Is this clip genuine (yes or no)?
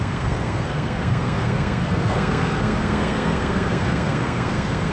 no